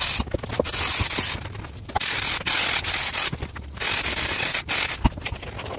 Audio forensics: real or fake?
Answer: real